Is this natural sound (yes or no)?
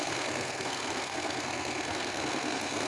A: no